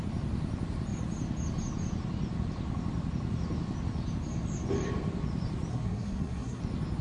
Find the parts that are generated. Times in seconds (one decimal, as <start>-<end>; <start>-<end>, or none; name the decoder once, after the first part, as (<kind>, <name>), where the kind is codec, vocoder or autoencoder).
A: 5.7-6.6 (codec, SNAC)